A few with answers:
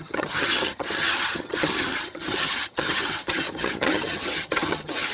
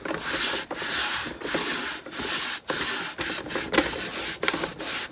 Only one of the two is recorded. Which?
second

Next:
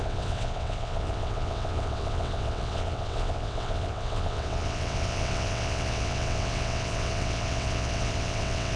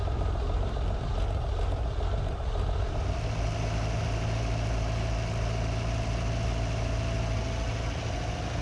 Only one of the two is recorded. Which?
second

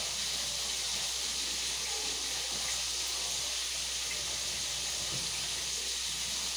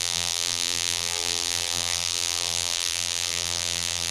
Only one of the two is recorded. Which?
first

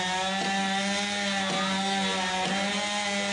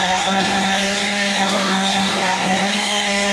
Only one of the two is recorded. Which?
first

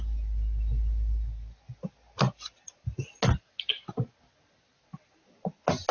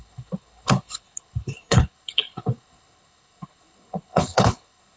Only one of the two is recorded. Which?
first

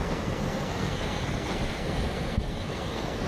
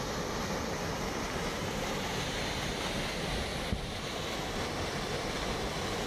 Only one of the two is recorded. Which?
second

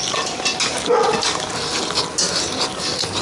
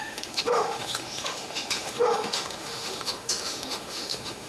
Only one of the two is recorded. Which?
first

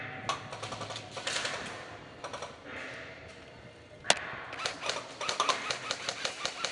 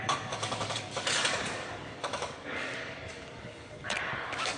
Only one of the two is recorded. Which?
first